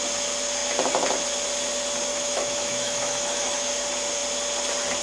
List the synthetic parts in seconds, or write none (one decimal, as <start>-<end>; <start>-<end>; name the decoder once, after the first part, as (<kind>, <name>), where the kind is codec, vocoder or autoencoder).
2.1-3.7 (autoencoder, DAC-VAE)